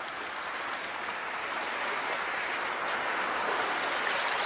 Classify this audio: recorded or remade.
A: recorded